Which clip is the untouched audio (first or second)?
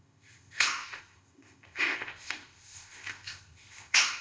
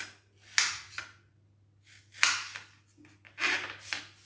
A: second